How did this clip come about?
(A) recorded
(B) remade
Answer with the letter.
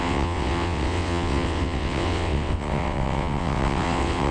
B